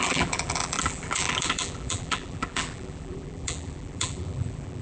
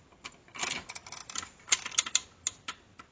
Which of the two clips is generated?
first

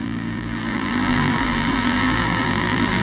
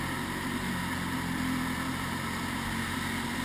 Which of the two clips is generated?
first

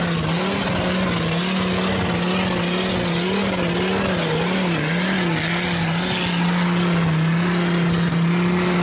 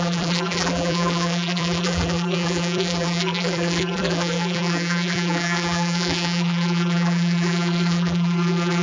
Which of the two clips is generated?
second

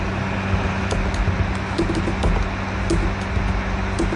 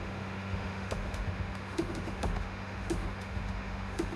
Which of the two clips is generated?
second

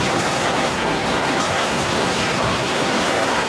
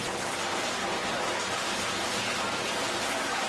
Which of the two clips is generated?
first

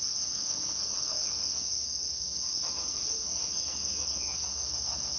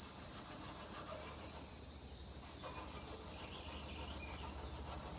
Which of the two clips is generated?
first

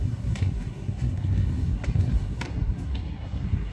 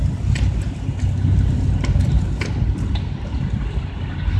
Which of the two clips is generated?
first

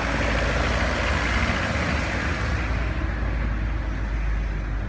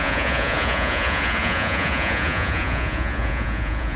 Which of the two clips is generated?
second